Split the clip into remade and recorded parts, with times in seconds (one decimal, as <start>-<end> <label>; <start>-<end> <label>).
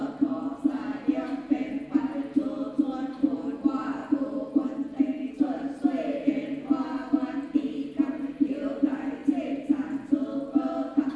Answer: 0.0-4.0 recorded; 4.0-5.3 remade; 5.3-11.2 recorded